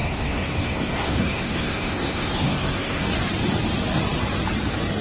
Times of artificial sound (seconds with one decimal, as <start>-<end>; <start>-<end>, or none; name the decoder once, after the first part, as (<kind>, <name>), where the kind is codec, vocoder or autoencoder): 0.0-3.0 (codec, SNAC)